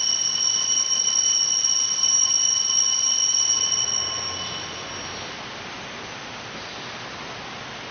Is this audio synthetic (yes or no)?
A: no